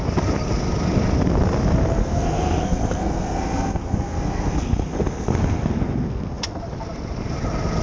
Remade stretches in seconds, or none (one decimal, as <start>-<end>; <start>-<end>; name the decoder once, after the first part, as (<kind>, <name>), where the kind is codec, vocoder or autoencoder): 2.0-6.6 (codec, SNAC)